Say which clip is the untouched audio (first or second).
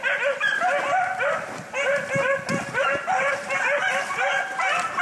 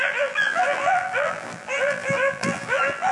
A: first